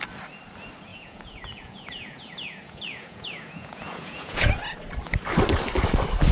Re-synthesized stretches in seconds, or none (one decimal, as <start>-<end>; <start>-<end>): 0.9-4.5